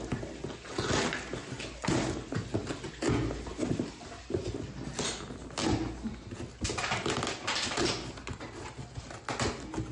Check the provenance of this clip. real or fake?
real